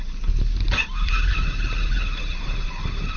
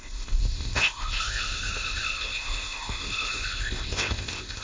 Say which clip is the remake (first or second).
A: second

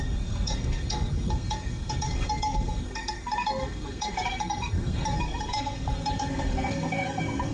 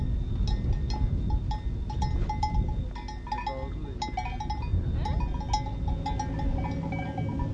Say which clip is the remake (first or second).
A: first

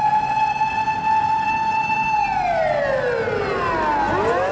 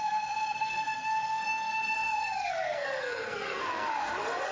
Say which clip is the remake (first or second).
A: second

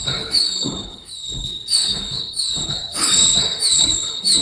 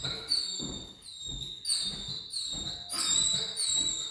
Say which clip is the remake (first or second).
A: first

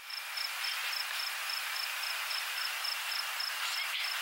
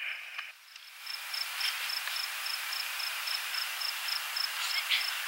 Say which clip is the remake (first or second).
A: second